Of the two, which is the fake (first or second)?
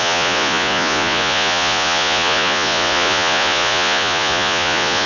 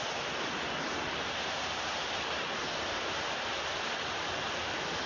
first